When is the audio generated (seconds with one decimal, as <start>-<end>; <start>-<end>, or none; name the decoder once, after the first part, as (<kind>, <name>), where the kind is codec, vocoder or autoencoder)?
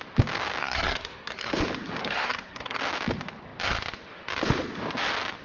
0.6-1.5 (codec, SNAC); 2.0-2.8